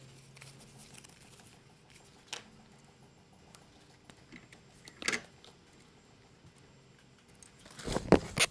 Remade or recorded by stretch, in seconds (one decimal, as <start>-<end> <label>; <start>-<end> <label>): 0.0-0.8 recorded; 0.8-1.5 remade; 1.5-8.5 recorded